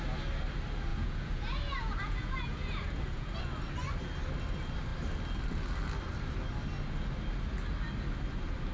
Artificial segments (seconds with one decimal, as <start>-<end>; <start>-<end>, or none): 0.9-3.4